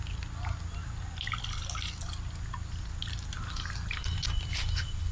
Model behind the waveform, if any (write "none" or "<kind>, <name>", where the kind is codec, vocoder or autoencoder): none